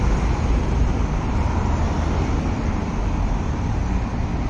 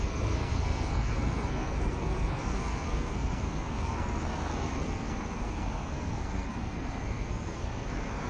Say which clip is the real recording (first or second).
first